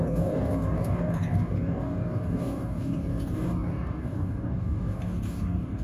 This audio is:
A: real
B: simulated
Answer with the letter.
B